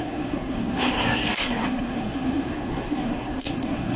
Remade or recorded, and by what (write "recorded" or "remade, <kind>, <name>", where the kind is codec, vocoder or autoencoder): remade, codec, SNAC